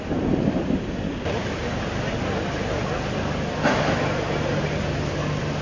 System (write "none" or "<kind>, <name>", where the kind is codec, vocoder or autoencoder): none